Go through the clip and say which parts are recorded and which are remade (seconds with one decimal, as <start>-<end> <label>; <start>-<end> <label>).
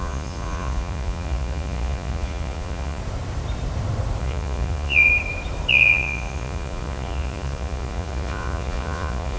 0.0-3.0 remade; 3.0-4.2 recorded; 4.2-5.1 remade; 5.1-5.7 recorded; 5.7-9.4 remade